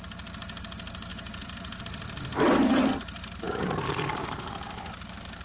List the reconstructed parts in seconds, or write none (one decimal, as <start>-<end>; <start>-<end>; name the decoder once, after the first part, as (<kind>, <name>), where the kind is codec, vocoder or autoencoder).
1.1-1.8 (vocoder, Vocos)